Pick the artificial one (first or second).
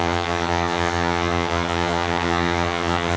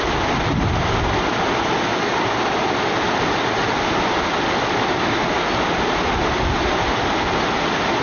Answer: first